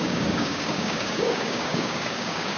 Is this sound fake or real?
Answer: fake